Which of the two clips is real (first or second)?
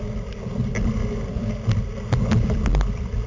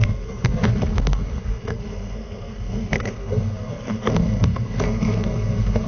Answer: first